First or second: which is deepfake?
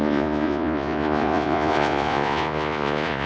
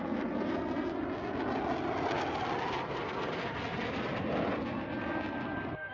first